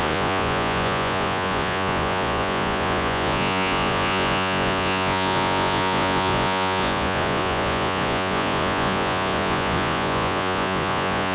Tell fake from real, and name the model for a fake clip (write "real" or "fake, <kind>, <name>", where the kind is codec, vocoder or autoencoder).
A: fake, vocoder, Vocos